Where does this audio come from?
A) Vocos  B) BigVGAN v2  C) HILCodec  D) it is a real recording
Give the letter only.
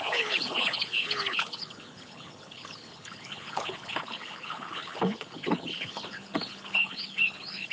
C